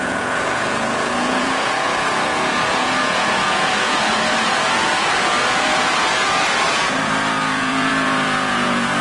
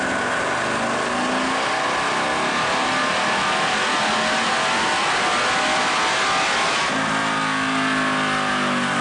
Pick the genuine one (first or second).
second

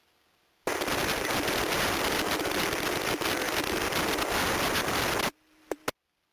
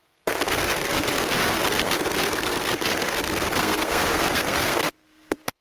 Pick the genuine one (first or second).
first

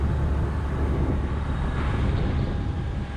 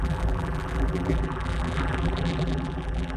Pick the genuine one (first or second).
first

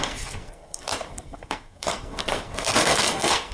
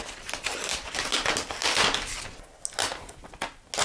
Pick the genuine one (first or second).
second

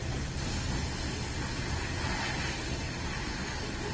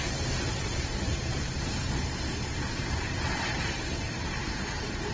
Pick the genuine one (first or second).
first